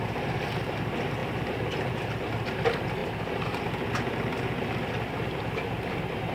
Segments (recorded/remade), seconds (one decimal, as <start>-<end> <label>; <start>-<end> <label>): 0.0-6.3 recorded